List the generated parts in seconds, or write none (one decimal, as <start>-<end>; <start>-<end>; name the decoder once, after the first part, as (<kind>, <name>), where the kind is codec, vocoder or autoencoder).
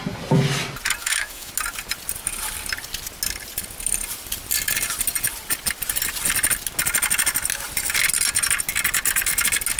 1.0-1.5 (autoencoder, DAC-VAE)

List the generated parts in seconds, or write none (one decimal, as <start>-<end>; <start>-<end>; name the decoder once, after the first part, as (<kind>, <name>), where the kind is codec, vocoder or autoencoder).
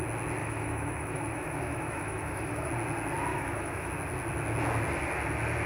0.4-2.7 (autoencoder, DAC-VAE); 3.3-3.9